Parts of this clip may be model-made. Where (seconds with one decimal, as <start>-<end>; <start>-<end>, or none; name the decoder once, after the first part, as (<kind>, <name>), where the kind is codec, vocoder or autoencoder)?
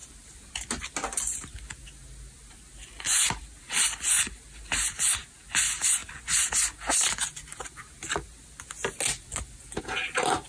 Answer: none